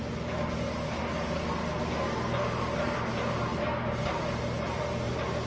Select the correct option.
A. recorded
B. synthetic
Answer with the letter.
A